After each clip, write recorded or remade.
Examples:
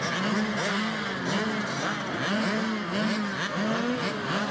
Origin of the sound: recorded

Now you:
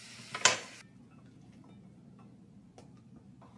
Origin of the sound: recorded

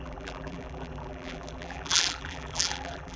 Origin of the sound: remade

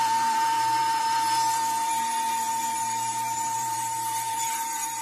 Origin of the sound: remade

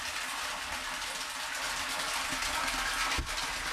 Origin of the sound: recorded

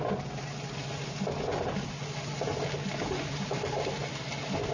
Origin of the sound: recorded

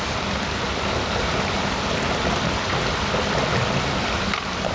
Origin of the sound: recorded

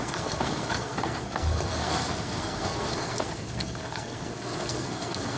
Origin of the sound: remade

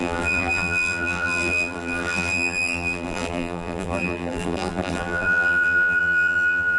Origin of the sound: remade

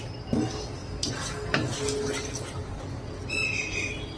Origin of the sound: recorded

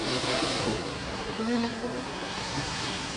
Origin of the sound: remade